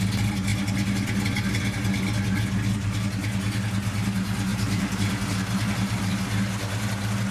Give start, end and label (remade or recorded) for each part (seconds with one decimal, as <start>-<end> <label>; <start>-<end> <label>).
0.0-4.5 recorded; 4.5-6.2 remade; 6.2-7.3 recorded

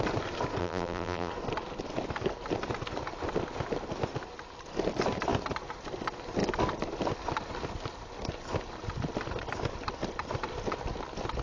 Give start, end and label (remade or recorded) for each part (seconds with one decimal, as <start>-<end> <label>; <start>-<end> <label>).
0.0-0.6 recorded; 0.6-1.3 remade; 1.3-11.4 recorded

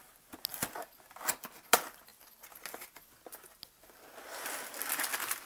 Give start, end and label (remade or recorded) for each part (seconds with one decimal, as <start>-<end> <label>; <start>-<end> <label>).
0.0-5.5 recorded

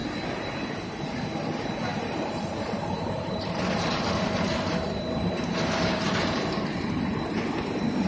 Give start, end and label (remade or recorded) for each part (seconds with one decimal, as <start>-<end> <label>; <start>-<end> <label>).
0.0-1.9 recorded; 1.9-6.6 remade; 6.6-8.1 recorded

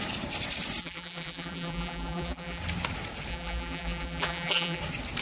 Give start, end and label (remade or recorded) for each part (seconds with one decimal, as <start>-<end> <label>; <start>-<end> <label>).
0.0-0.8 recorded; 0.8-2.6 remade; 2.6-3.3 recorded; 3.3-4.8 remade; 4.8-5.2 recorded